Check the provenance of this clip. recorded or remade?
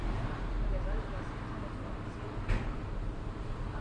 recorded